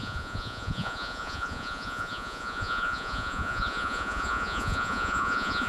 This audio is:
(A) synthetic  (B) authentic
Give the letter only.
A